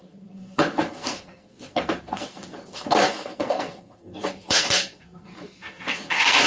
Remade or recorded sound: remade